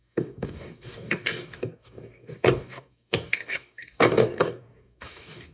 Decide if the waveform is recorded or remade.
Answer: remade